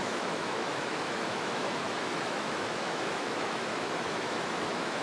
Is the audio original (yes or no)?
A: no